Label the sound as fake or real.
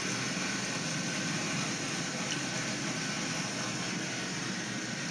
real